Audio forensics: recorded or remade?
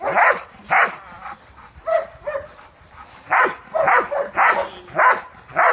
recorded